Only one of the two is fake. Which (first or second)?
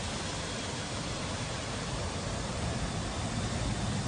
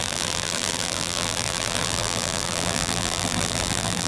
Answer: second